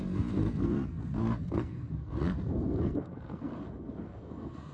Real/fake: fake